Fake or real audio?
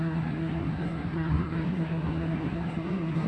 fake